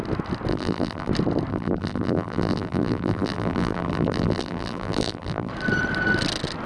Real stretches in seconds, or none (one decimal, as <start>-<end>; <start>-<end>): 0.0-0.5; 1.1-1.5; 5.5-6.7

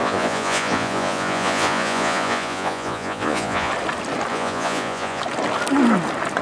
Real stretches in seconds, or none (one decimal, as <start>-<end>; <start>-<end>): 3.7-4.3; 5.2-6.4